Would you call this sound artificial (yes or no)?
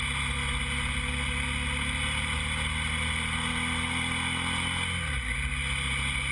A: no